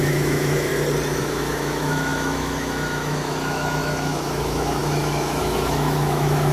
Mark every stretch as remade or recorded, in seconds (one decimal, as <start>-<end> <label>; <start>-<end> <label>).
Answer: 0.0-0.7 remade; 0.7-1.2 recorded; 1.2-6.5 remade